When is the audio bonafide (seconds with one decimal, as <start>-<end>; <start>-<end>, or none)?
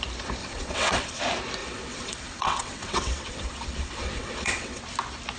0.0-0.4; 1.2-1.6; 4.8-5.4